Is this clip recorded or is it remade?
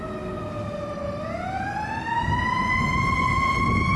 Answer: recorded